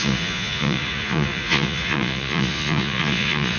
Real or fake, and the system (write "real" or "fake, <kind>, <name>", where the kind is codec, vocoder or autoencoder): fake, vocoder, Vocos